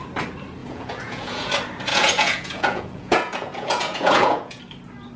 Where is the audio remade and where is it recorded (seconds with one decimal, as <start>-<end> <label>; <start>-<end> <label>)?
0.0-0.6 recorded; 0.6-1.5 remade; 1.5-1.9 recorded; 1.9-4.6 remade; 4.6-5.2 recorded

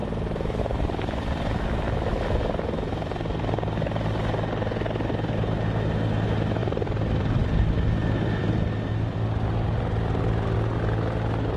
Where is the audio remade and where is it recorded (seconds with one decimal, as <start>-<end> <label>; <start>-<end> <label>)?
0.0-0.6 remade; 0.6-6.6 recorded; 6.6-8.4 remade; 8.4-11.6 recorded

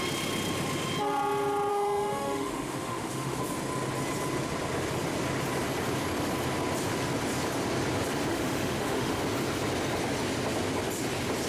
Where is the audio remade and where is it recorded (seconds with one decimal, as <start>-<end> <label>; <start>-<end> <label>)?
0.0-1.7 recorded; 1.7-3.4 remade; 3.4-8.3 recorded; 8.3-9.2 remade; 9.2-11.5 recorded

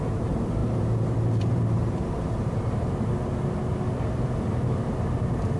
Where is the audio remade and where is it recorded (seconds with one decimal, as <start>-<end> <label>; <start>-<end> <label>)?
0.0-0.6 recorded; 0.6-3.1 remade; 3.1-5.6 recorded

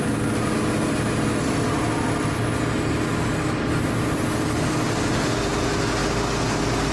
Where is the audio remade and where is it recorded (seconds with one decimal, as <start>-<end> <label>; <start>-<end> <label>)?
0.0-6.9 recorded